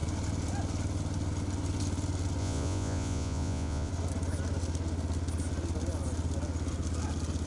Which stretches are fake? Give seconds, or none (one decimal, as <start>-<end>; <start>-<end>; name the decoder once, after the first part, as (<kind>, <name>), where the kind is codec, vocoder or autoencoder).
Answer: 2.4-3.9 (vocoder, Vocos)